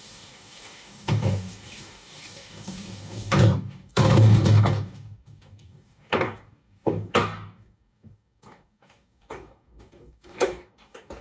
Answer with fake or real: fake